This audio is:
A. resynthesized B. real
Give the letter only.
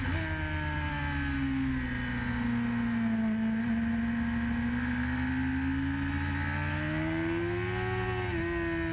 B